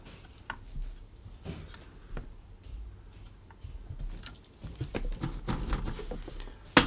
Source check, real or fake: real